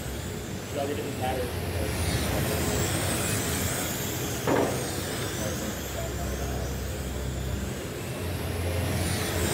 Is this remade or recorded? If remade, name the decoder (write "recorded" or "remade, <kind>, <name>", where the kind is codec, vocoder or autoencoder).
recorded